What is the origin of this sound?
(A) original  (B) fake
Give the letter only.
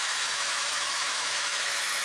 B